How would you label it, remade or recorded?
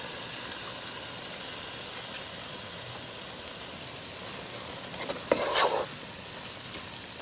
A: recorded